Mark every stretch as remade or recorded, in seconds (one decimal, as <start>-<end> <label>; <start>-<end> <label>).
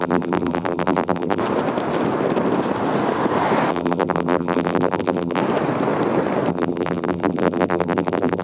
0.0-1.4 remade; 1.4-3.7 recorded; 3.7-5.4 remade; 5.4-6.5 recorded; 6.5-8.4 remade